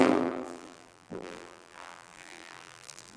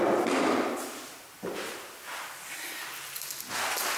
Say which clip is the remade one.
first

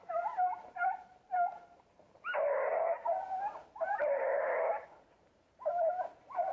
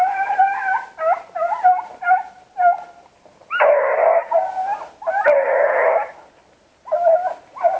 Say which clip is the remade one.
first